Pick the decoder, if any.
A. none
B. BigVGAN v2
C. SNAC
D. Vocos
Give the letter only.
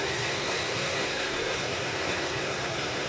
C